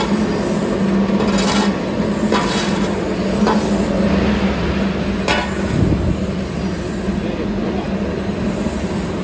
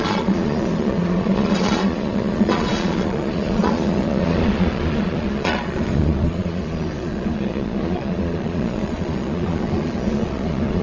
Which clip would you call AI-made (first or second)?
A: second